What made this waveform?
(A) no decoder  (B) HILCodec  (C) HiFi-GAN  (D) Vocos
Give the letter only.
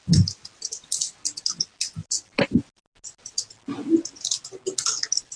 A